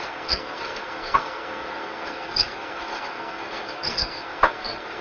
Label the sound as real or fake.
fake